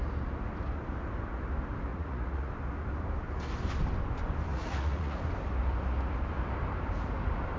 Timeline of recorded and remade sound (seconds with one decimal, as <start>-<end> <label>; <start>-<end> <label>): 0.0-1.9 recorded; 1.9-2.5 remade; 2.5-4.5 recorded; 4.5-5.2 remade; 5.2-7.6 recorded